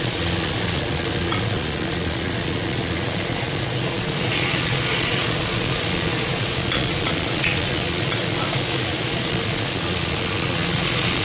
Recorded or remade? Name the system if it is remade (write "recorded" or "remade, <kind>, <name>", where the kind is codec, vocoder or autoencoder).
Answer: remade, vocoder, Vocos